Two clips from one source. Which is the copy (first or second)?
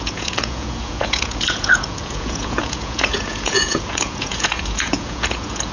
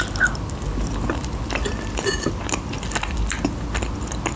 first